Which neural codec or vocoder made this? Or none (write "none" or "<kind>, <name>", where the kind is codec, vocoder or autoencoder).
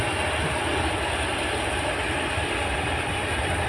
none